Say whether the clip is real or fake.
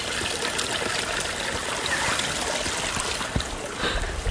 real